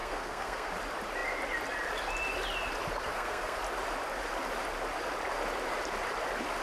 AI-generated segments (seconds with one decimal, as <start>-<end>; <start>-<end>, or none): 0.0-0.7; 3.1-3.6